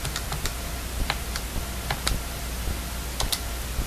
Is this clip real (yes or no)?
yes